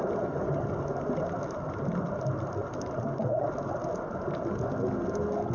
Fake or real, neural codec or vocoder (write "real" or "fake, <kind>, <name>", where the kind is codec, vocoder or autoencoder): real